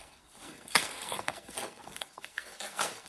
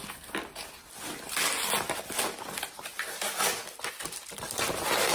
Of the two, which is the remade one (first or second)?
first